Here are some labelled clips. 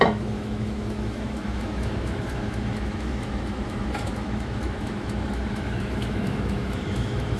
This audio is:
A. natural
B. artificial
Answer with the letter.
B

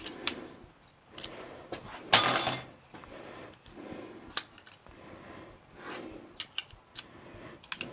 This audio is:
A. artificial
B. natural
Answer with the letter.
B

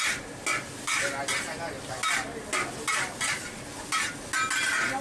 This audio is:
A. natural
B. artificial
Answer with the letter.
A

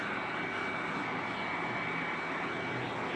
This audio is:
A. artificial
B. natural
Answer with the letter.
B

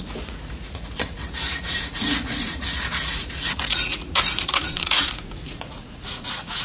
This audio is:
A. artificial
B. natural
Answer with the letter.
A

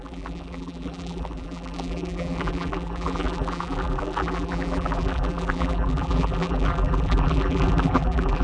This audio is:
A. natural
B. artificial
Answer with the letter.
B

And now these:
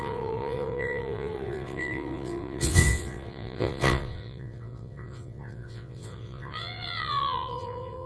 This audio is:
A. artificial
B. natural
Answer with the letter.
A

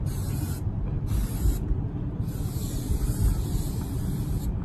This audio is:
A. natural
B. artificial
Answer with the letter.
A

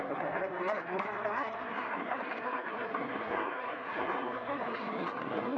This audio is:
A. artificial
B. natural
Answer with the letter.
A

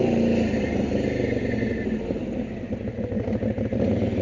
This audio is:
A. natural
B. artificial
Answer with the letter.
A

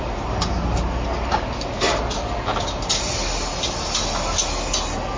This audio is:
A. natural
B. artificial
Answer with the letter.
A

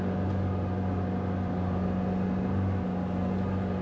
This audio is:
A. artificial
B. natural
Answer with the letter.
B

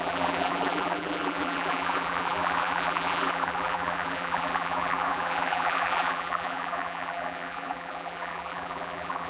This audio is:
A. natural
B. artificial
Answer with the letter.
B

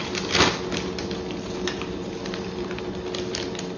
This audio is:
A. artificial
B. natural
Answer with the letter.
B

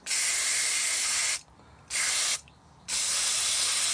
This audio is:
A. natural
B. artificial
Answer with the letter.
A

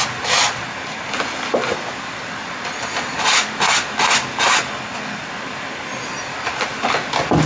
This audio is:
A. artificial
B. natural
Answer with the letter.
B